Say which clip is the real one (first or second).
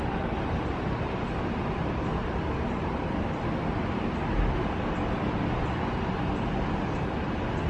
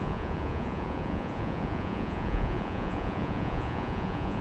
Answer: first